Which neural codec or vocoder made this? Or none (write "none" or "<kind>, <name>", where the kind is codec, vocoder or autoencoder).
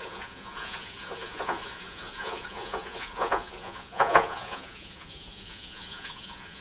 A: vocoder, Vocos